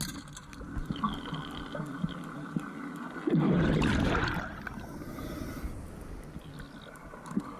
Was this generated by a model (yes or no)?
no